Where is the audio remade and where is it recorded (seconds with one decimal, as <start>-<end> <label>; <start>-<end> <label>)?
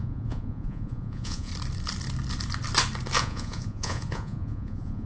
0.0-1.5 remade; 1.5-3.2 recorded; 3.2-5.1 remade